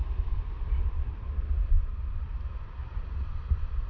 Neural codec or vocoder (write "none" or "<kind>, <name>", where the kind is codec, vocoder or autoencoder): vocoder, BigVGAN v2